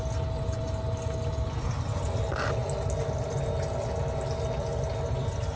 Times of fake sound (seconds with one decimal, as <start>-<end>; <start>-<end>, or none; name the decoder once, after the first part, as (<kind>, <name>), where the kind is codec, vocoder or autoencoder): none